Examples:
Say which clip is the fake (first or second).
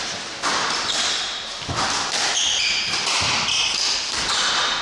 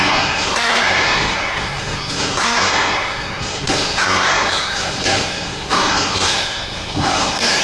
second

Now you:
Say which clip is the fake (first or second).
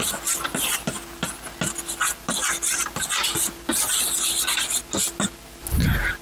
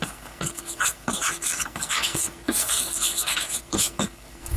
second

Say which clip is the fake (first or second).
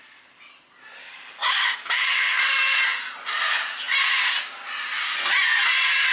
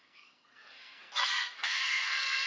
second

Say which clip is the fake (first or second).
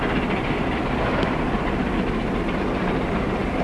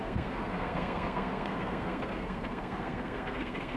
second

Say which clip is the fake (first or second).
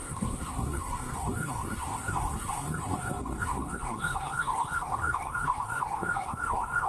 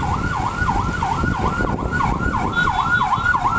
first